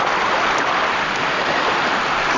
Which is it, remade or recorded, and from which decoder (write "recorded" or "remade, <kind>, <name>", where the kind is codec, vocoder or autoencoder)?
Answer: recorded